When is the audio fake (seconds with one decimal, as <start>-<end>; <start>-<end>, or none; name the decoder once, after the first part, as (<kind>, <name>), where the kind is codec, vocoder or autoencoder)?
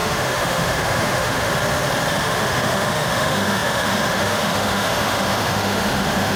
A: 0.0-1.5 (autoencoder, DAC-VAE); 2.1-6.4